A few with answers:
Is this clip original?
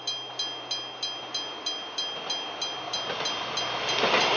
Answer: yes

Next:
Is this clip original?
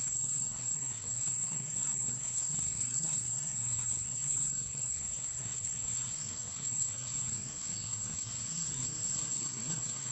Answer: no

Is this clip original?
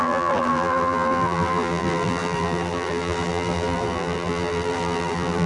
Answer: no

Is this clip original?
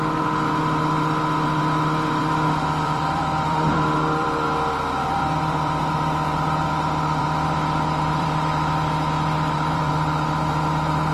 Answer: no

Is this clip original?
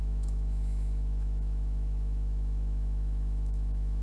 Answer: no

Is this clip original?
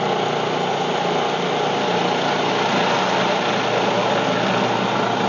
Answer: yes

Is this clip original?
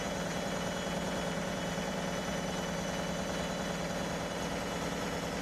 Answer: yes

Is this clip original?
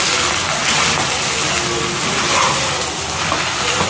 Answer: yes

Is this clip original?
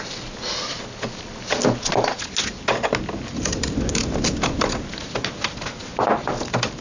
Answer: yes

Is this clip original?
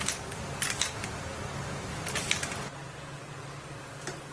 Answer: yes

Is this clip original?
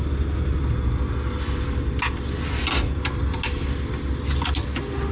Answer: yes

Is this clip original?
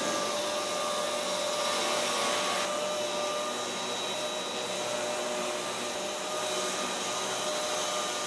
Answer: yes